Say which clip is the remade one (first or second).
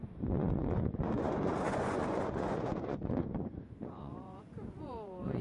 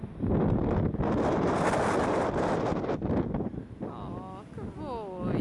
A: first